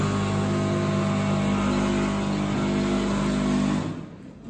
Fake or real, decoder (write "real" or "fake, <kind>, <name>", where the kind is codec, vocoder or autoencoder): real